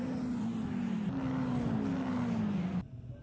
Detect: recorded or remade recorded